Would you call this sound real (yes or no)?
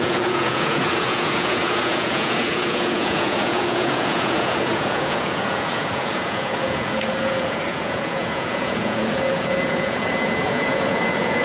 no